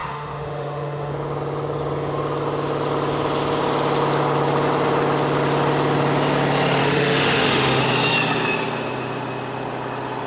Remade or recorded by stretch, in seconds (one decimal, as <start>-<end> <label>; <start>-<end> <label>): 0.0-1.1 remade; 1.1-6.8 recorded; 6.8-7.8 remade; 7.8-10.3 recorded